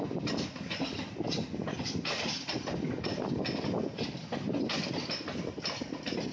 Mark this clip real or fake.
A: real